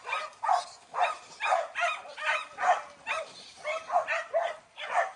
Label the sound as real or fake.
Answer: real